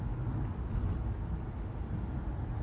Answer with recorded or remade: recorded